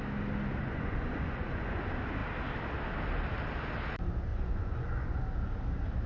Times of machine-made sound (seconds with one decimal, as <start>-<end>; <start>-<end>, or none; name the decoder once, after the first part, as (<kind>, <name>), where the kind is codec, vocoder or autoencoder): 0.6-1.8 (vocoder, Vocos); 4.3-5.2

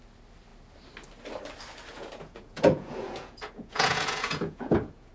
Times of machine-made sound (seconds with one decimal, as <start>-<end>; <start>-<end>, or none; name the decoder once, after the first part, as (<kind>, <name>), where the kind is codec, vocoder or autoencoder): 1.9-5.1 (vocoder, Vocos)

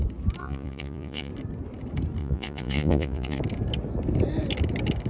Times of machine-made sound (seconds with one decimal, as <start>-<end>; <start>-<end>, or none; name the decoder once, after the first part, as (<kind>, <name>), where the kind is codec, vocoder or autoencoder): 0.4-1.3 (vocoder, Vocos); 2.2-3.4

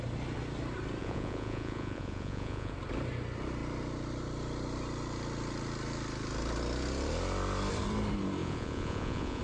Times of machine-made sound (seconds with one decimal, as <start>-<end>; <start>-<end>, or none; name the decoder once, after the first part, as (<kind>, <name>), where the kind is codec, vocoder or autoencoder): 1.0-2.7 (vocoder, Vocos); 8.4-9.4

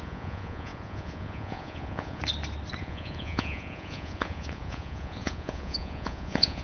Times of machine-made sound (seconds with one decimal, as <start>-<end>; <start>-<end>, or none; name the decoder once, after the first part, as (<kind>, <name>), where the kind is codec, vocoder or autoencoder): 0.0-2.2 (vocoder, Vocos); 2.8-6.6

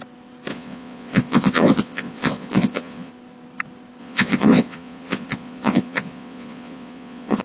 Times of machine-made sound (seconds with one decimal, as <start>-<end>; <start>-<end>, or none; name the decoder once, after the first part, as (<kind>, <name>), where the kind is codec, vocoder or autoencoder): 0.5-3.1 (vocoder, Vocos); 4.0-7.4

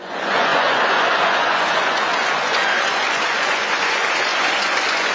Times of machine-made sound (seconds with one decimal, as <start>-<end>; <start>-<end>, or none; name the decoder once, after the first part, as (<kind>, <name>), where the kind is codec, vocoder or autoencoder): 0.0-5.1 (vocoder, Vocos)

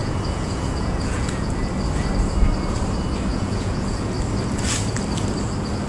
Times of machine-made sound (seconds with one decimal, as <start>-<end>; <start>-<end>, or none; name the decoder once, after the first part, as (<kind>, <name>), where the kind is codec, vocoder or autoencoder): 0.0-1.7 (vocoder, Vocos); 3.3-4.1